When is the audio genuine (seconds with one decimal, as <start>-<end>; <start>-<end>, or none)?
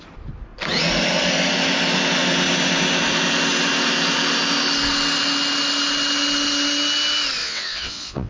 0.0-7.4